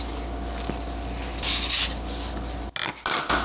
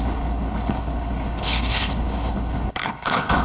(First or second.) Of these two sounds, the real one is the first